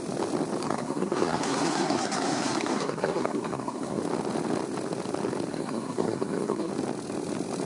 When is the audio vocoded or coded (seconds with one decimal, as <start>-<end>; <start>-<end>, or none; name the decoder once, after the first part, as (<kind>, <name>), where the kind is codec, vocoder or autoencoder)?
0.6-4.0 (codec, SNAC); 5.5-6.7